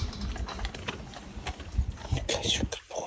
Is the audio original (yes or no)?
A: yes